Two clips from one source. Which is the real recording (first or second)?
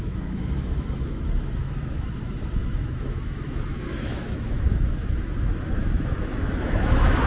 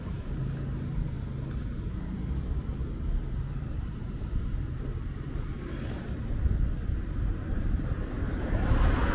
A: second